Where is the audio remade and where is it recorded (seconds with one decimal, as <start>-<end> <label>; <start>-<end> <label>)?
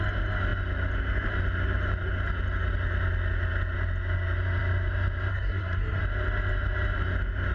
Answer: 0.0-5.3 recorded; 5.3-6.0 remade; 6.0-7.5 recorded